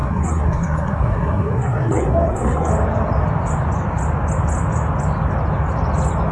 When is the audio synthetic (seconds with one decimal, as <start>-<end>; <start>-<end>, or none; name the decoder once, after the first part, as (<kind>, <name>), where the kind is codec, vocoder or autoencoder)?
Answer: 0.0-2.7 (codec, SNAC)